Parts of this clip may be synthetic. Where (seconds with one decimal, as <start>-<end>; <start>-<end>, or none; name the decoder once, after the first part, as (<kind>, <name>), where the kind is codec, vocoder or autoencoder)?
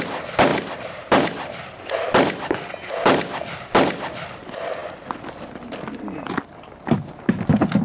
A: none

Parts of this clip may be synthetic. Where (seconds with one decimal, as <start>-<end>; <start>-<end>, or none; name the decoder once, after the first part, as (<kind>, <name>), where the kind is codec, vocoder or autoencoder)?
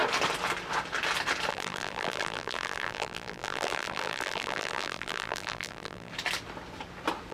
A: 1.5-6.1 (vocoder, BigVGAN v2)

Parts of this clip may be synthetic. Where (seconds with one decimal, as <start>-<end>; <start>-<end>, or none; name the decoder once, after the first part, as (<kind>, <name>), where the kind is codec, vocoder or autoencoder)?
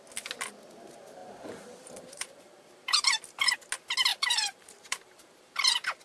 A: 1.2-3.6 (vocoder, BigVGAN v2); 4.1-6.0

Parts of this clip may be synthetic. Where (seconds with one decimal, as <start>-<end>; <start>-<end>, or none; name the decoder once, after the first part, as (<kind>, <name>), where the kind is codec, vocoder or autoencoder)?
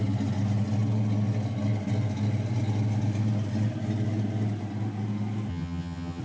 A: 5.5-6.2 (vocoder, HiFi-GAN)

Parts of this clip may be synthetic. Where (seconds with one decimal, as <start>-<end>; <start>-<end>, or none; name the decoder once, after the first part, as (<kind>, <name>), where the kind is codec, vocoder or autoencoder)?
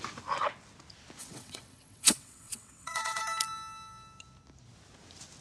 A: 1.2-3.2 (vocoder, WaveNeXt)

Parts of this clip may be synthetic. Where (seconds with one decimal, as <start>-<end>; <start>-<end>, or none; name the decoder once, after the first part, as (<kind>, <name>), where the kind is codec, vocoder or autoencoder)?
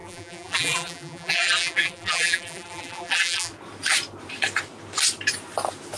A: 0.0-3.5 (vocoder, BigVGAN v2)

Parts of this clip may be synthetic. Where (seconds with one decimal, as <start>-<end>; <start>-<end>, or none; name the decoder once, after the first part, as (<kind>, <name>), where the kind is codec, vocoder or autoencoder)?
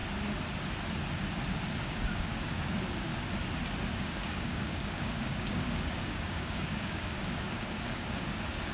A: 1.8-3.1 (codec, DAC); 3.9-8.7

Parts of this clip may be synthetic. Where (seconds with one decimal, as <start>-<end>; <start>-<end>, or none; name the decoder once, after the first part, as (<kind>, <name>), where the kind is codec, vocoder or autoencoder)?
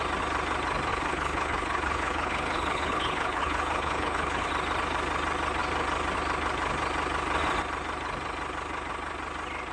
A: 0.9-4.5 (codec, HILCodec)